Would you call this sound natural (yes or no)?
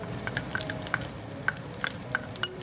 no